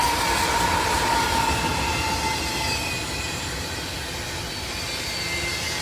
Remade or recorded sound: recorded